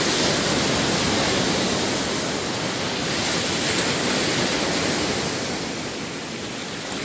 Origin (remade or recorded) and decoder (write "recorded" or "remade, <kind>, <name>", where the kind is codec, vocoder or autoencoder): recorded